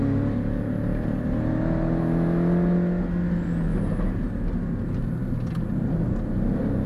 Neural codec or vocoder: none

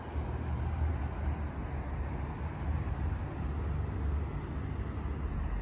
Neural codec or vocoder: none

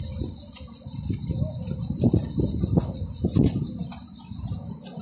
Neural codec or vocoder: none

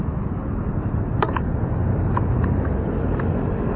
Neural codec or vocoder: none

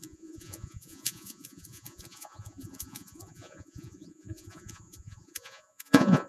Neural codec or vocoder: vocoder, Vocos